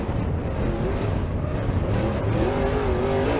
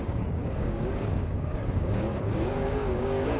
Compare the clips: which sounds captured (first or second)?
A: first